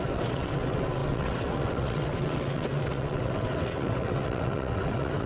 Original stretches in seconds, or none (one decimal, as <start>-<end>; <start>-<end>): none